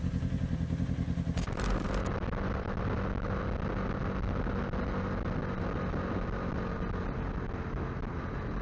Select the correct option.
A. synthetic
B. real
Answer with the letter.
B